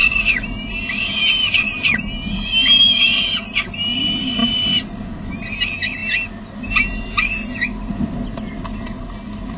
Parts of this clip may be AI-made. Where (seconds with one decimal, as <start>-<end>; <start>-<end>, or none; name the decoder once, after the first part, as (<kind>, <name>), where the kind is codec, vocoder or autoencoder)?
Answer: 0.0-0.7 (vocoder, BigVGAN v2)